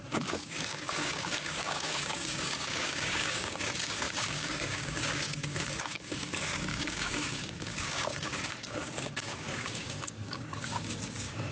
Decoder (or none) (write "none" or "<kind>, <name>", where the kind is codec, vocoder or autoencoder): codec, DAC